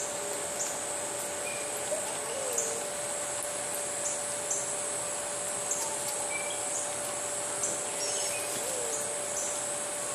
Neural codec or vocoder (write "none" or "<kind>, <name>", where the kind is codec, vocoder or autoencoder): none